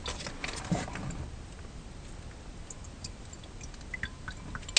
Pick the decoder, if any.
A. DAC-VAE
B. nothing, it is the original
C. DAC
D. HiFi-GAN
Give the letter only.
B